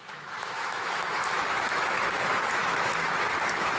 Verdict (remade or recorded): remade